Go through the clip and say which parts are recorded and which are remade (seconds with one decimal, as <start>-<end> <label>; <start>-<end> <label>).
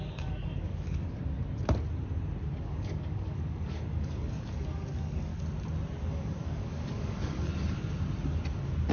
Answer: 0.0-1.4 remade; 1.4-2.6 recorded; 2.6-5.3 remade; 5.3-6.1 recorded; 6.1-7.5 remade; 7.5-8.9 recorded